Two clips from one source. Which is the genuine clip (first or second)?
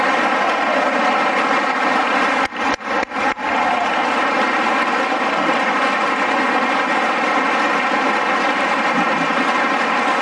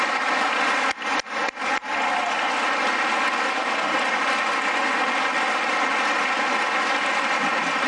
second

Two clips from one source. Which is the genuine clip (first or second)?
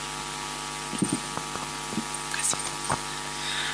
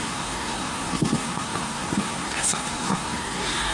first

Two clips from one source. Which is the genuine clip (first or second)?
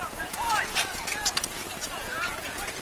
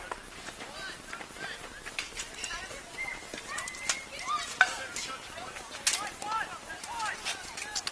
second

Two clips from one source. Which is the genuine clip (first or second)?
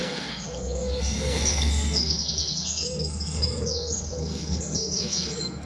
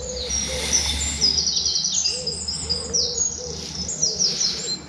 second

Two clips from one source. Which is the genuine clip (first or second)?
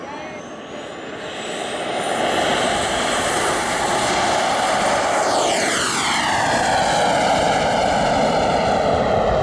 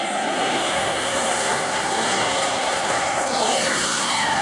first